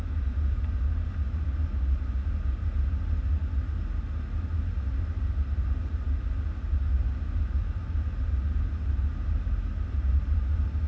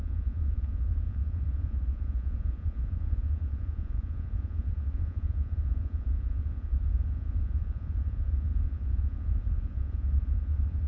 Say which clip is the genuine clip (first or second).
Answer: first